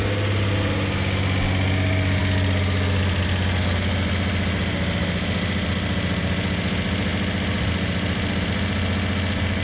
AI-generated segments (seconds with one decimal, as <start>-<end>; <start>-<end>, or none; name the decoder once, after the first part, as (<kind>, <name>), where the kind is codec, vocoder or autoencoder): none